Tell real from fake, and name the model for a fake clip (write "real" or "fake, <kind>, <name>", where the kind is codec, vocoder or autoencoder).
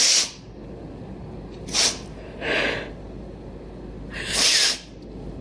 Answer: real